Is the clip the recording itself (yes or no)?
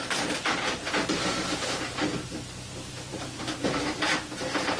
no